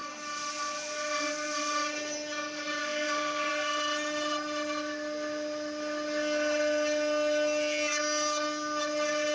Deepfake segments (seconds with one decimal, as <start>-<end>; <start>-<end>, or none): 2.8-3.5